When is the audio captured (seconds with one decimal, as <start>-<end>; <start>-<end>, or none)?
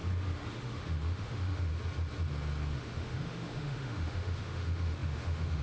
0.0-0.6; 1.7-2.8